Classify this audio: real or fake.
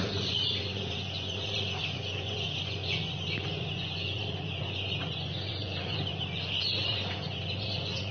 fake